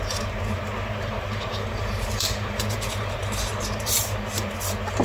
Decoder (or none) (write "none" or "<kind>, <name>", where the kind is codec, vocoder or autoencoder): vocoder, BigVGAN v2